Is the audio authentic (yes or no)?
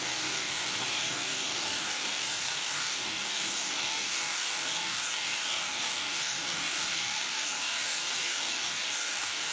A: no